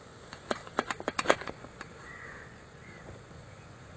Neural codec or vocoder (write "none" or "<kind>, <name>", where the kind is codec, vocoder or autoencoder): vocoder, Vocos